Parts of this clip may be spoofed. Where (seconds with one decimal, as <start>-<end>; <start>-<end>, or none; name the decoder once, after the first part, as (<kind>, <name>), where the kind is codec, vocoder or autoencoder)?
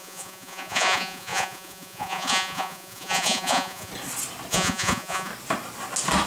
0.0-3.9 (vocoder, Vocos); 4.5-5.3